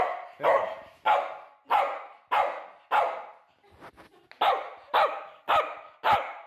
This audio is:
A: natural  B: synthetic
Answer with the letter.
A